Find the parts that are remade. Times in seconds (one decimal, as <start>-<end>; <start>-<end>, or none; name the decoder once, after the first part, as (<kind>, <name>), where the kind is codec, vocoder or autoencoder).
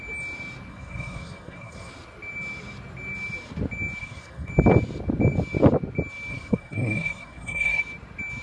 0.7-1.9 (codec, SNAC); 4.0-4.5; 6.3-7.8